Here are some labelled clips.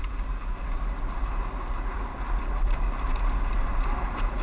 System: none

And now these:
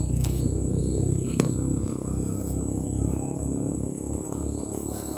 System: codec, SNAC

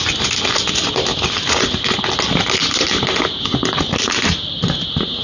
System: none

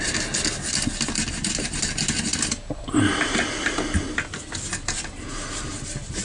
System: none